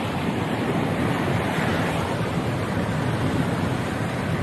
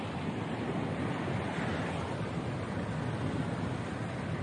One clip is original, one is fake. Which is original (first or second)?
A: second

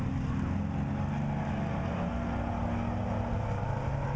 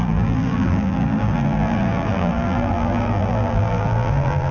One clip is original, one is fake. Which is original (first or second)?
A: first